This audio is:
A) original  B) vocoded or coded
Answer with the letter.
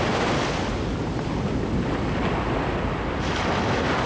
A